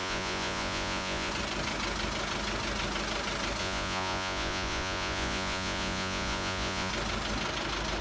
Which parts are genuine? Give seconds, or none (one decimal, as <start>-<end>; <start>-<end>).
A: 1.3-3.6; 6.9-8.0

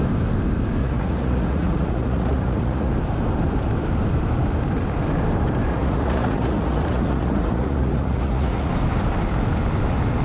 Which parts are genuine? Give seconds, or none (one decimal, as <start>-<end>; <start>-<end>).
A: 0.0-0.8; 2.9-5.7; 8.7-10.2

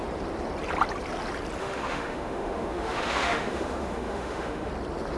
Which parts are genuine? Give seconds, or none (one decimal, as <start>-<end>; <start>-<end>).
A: 0.0-1.6; 4.7-5.2

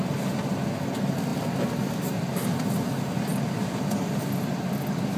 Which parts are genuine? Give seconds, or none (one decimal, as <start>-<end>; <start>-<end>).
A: 0.0-5.2

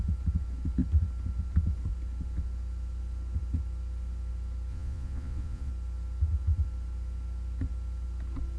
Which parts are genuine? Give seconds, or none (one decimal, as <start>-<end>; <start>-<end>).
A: 0.0-4.7; 5.7-8.6

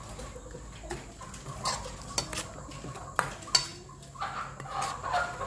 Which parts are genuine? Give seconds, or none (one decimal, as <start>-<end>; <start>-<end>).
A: 0.0-5.5

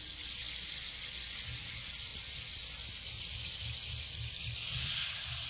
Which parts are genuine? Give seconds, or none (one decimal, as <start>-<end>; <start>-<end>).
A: 0.0-2.1; 2.6-5.5

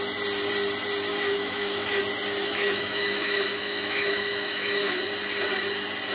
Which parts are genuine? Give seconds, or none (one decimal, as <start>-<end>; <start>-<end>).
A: 0.0-1.1; 2.0-2.4; 5.0-6.1